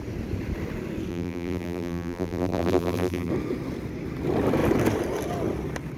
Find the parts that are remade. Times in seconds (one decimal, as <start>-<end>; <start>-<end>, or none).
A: 1.1-3.3